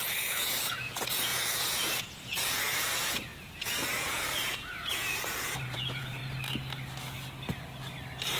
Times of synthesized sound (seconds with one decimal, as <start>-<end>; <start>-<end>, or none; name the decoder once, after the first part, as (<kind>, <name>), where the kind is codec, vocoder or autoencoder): 0.0-6.2 (vocoder, Vocos)

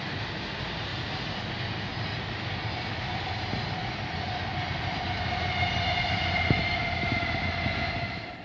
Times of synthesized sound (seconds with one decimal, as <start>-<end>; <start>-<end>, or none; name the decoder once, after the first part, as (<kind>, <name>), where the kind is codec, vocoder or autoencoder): none

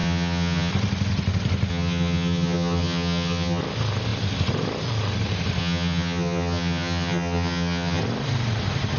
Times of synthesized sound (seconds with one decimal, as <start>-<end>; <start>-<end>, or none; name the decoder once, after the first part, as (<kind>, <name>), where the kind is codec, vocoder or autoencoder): 0.0-0.7 (vocoder, HiFi-GAN); 1.7-3.6; 5.6-8.0

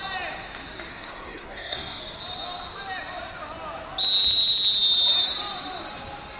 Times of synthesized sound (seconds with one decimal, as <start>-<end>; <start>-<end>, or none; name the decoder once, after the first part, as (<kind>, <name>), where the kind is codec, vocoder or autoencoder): 0.9-2.0 (codec, SNAC)